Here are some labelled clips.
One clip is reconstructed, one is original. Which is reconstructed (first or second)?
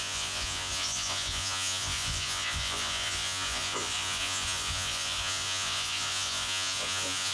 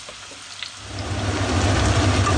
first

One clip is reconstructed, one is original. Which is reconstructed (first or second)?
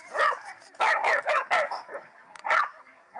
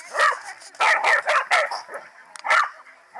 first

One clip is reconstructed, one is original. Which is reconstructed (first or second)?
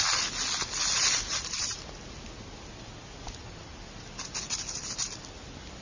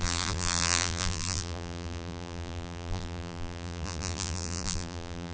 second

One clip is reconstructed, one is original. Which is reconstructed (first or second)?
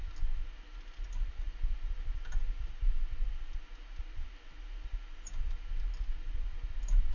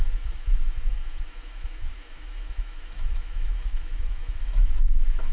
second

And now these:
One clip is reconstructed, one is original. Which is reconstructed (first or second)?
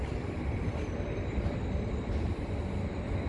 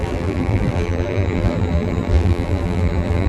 second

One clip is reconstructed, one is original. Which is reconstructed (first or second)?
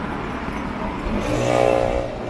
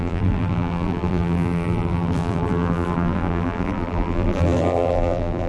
second